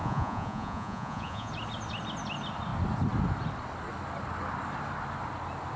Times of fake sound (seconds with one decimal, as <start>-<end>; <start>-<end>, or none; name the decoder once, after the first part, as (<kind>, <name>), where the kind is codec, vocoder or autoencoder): 0.0-1.5 (vocoder, Vocos)